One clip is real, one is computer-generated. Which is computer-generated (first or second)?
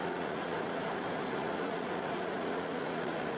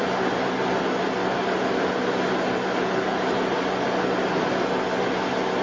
first